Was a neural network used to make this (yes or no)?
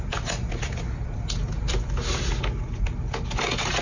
no